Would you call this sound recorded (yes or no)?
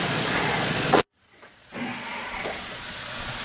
no